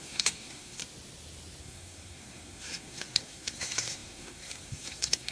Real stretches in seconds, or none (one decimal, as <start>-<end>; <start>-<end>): 0.8-1.6